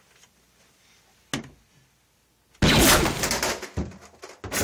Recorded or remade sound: recorded